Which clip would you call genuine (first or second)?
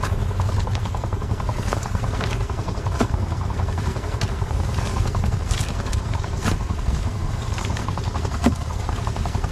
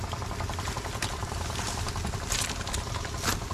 second